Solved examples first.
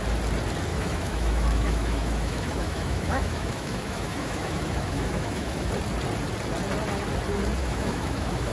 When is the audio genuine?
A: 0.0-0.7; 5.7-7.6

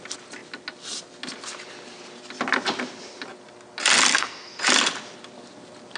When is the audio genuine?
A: 0.0-4.1; 4.6-6.0

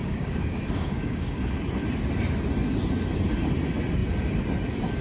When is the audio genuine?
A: 1.6-5.0

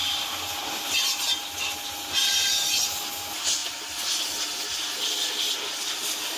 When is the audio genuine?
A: 0.0-6.4

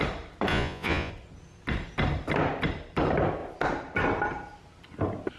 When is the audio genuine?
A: 0.0-0.5; 1.1-5.4

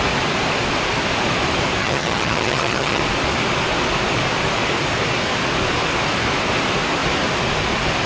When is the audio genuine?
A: 0.0-1.8; 3.0-8.1

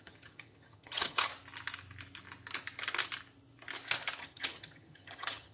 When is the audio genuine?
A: 1.3-4.2

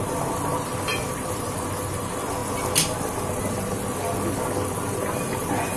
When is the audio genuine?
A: 0.0-0.9; 1.6-5.8